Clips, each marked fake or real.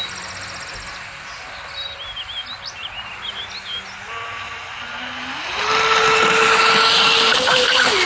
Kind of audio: real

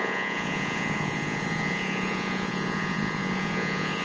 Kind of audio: fake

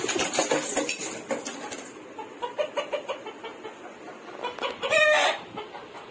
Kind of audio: real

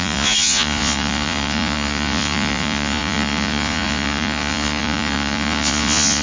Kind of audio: fake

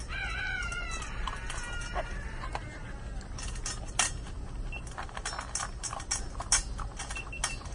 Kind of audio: real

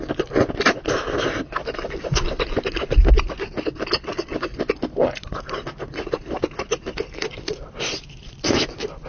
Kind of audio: real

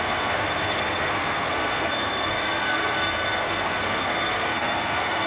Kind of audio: fake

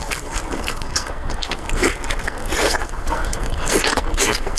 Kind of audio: fake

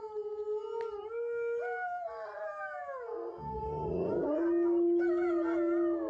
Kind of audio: real